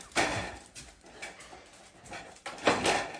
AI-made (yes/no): no